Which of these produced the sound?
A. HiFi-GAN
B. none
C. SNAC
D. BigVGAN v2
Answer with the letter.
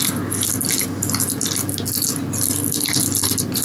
B